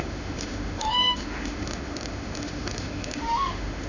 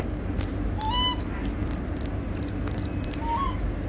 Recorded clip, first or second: second